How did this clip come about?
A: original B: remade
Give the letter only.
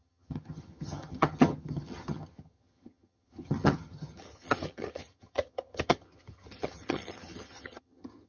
B